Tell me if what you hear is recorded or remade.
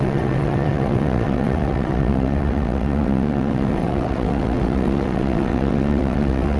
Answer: remade